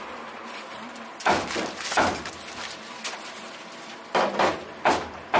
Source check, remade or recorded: recorded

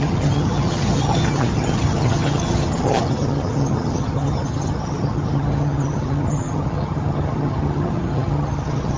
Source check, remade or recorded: remade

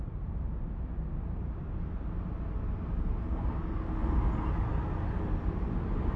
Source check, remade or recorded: recorded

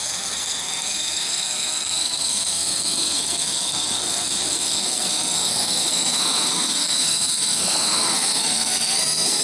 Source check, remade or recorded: remade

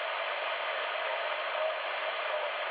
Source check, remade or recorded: recorded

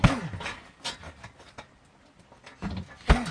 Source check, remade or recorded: recorded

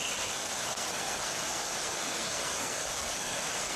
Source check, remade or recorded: remade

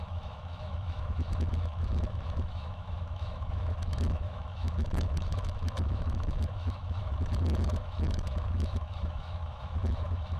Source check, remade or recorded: remade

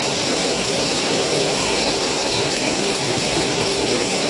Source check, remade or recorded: remade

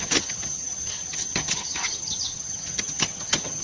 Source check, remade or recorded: remade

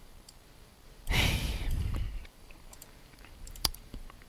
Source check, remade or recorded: remade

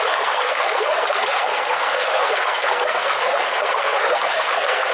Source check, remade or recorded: remade